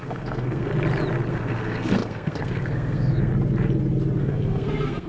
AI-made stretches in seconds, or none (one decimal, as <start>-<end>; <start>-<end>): 0.0-0.7; 1.3-3.3; 4.2-5.1